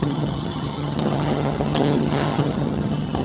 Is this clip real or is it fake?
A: fake